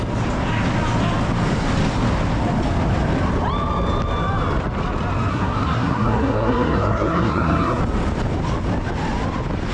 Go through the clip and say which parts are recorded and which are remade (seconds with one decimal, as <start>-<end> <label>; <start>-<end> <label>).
0.0-5.3 recorded; 5.3-7.8 remade; 7.8-9.7 recorded